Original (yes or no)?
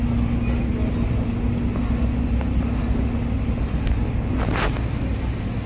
yes